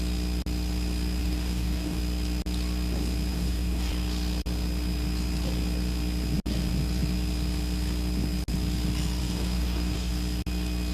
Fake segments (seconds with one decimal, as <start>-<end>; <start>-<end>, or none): 1.2-2.0; 3.3-3.9; 9.2-10.1